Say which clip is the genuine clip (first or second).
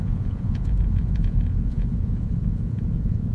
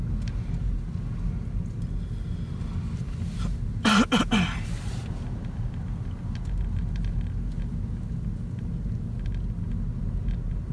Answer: second